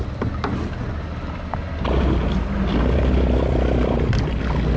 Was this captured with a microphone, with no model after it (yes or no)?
yes